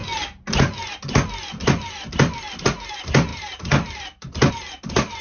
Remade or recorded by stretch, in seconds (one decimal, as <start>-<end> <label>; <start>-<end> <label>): 0.0-3.3 recorded; 3.3-4.5 remade; 4.5-5.2 recorded